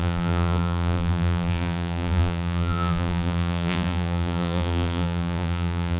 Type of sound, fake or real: fake